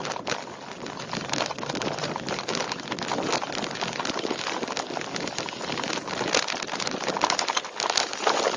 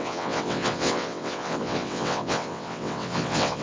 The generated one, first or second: second